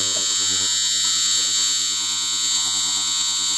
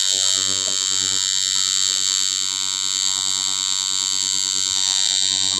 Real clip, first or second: second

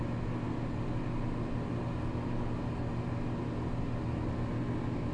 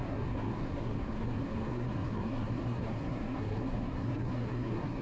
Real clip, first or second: first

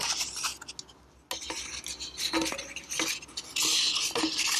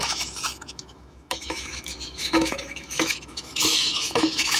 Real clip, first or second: first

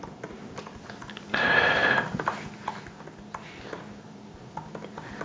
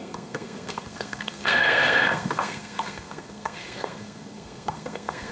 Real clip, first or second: first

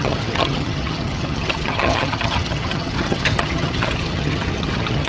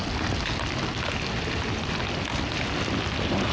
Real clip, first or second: second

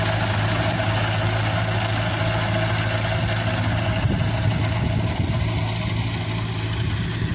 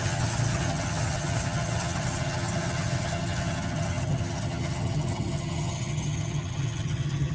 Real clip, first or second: first